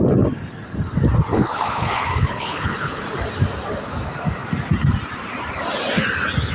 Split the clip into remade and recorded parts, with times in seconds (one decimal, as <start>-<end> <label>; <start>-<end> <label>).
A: 0.0-1.3 recorded; 1.3-3.0 remade; 3.0-6.5 recorded